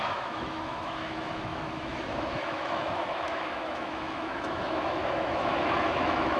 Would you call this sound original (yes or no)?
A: no